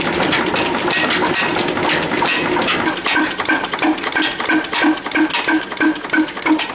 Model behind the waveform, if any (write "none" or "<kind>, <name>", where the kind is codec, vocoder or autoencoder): none